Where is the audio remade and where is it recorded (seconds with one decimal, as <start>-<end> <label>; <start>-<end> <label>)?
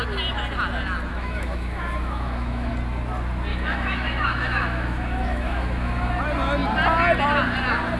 0.0-1.1 recorded; 1.1-2.7 remade; 2.7-3.5 recorded; 3.5-6.1 remade; 6.1-8.0 recorded